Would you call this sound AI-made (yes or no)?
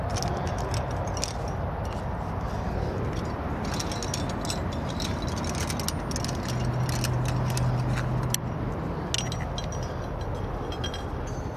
no